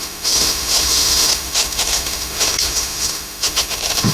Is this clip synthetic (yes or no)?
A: yes